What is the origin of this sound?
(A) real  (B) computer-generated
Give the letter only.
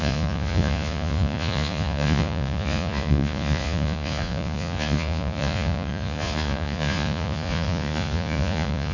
B